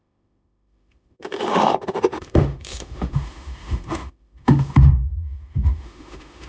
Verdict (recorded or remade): remade